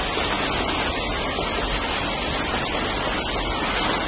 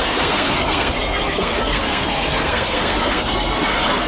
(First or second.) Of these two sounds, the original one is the first